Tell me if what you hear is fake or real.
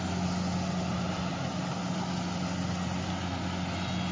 real